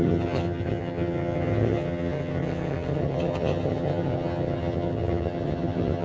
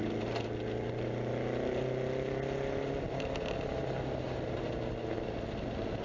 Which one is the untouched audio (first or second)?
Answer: second